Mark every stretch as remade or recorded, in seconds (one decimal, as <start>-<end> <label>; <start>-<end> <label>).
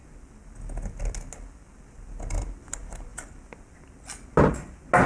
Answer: 0.0-5.1 recorded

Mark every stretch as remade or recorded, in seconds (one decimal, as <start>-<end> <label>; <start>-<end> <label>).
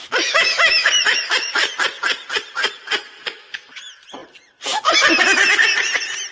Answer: 0.0-1.7 remade; 1.7-3.2 recorded; 3.2-3.8 remade; 3.8-6.3 recorded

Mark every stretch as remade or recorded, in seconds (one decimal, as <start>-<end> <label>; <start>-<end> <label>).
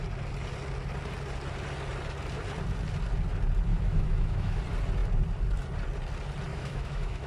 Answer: 0.0-3.7 recorded; 3.7-4.6 remade; 4.6-6.5 recorded; 6.5-7.3 remade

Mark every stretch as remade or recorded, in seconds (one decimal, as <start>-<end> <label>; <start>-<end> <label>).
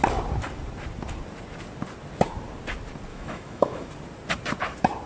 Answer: 0.0-3.1 recorded; 3.1-3.9 remade; 3.9-5.1 recorded